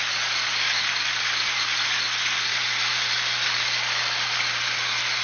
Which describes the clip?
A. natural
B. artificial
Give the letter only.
A